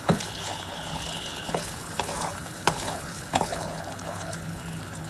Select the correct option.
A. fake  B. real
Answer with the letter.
A